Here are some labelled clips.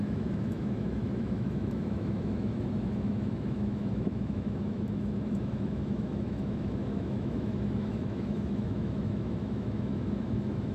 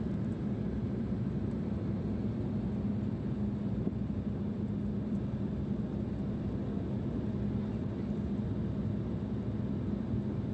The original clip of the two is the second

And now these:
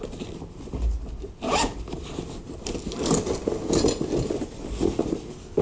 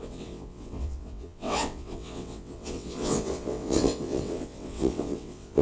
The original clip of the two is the first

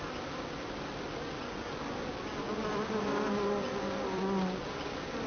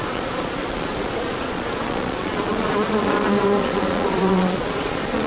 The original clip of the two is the first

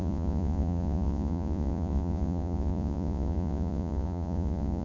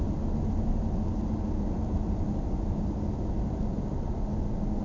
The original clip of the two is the second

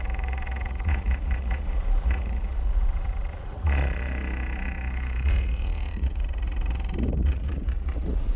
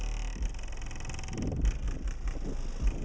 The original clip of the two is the second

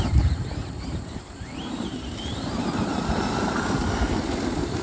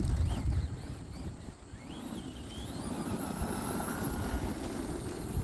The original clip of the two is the second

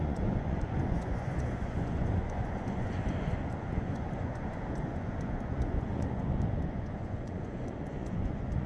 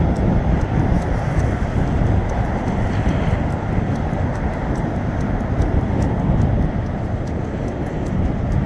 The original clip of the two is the second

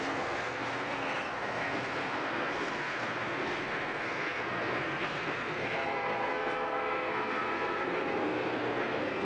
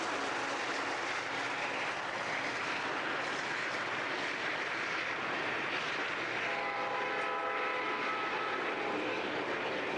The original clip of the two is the second